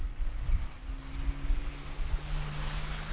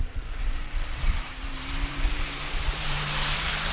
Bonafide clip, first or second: first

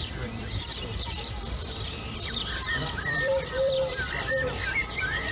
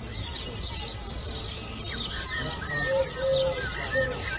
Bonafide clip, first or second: second